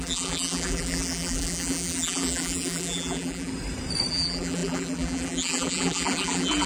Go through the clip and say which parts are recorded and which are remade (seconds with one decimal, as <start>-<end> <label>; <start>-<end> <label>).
0.0-3.5 remade; 3.5-4.1 recorded; 4.1-6.7 remade